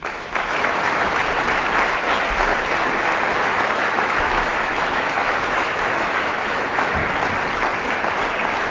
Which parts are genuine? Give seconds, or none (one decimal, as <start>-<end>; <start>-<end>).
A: 1.2-3.4; 7.0-8.7